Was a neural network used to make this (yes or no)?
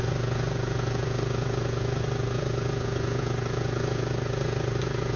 yes